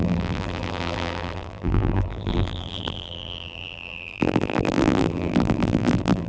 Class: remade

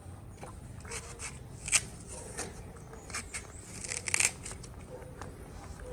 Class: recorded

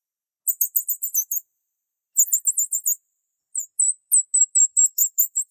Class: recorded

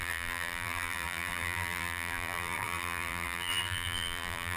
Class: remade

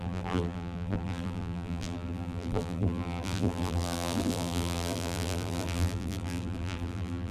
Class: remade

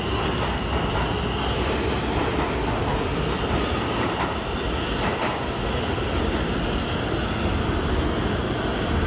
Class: recorded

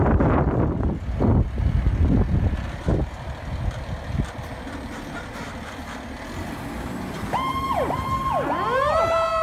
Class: recorded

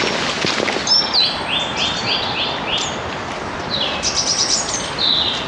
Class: recorded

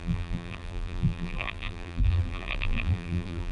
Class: remade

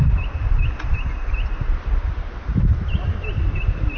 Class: remade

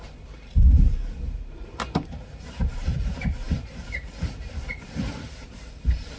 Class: remade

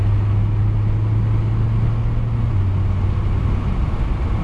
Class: recorded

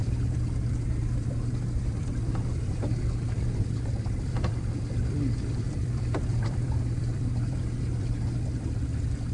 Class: remade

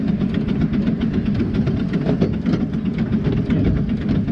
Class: recorded